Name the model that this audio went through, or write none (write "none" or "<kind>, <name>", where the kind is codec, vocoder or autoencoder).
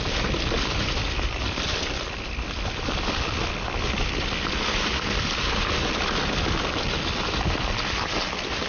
none